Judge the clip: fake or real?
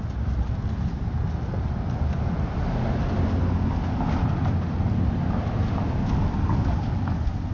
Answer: real